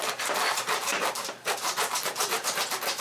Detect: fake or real fake